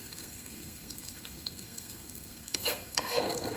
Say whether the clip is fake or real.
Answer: fake